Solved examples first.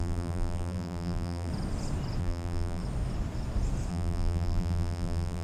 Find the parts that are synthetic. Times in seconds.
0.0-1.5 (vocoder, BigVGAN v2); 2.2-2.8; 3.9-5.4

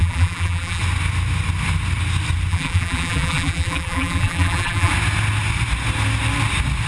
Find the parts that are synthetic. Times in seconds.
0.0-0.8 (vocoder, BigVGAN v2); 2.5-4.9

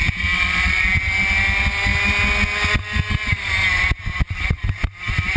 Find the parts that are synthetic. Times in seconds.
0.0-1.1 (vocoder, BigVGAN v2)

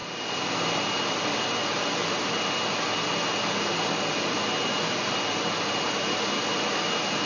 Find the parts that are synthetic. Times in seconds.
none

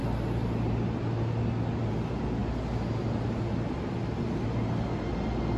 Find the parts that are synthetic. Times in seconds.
none